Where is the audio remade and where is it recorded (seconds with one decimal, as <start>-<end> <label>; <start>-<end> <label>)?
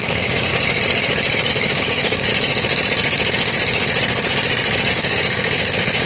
0.0-0.5 remade; 0.5-1.5 recorded; 1.5-2.3 remade; 2.3-4.9 recorded; 4.9-6.1 remade